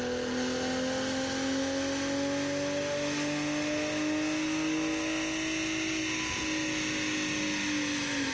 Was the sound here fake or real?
real